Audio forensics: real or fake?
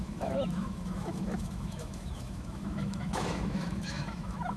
fake